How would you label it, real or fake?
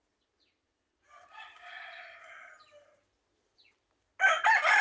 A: real